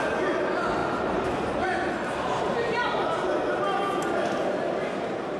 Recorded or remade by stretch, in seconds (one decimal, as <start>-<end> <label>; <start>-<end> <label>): 0.0-5.4 recorded